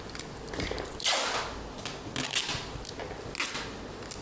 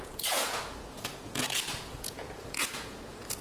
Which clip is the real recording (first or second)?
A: first